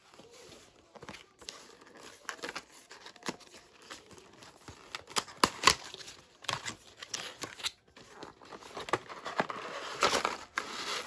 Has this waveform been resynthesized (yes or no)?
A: no